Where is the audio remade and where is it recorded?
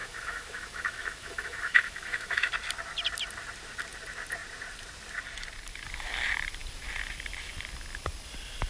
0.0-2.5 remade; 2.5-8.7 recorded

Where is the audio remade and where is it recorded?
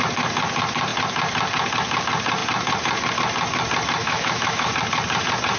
0.0-4.0 recorded; 4.0-4.7 remade; 4.7-5.6 recorded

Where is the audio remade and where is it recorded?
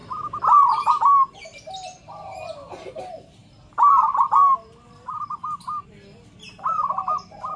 0.0-7.6 recorded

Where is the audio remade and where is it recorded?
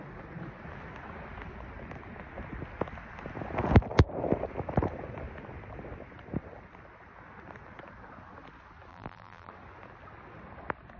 0.0-8.9 recorded; 8.9-9.5 remade; 9.5-11.0 recorded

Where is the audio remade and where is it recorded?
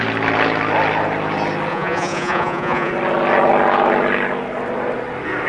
0.0-1.7 recorded; 1.7-2.9 remade; 2.9-5.5 recorded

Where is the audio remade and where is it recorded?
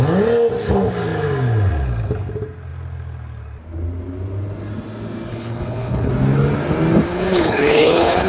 0.0-5.3 recorded; 5.3-6.1 remade; 6.1-7.1 recorded; 7.1-8.3 remade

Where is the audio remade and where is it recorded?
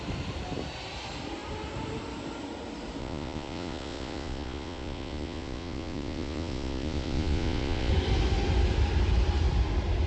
0.0-3.0 recorded; 3.0-7.9 remade; 7.9-10.1 recorded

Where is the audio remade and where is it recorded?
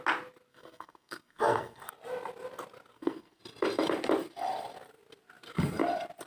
0.0-0.5 recorded; 0.5-1.9 remade; 1.9-2.9 recorded; 2.9-3.4 remade; 3.4-6.3 recorded